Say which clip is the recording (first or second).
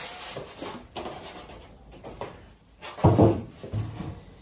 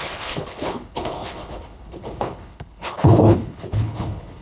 first